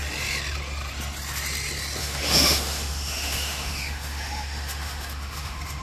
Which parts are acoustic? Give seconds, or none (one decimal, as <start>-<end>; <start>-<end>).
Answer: 0.0-2.0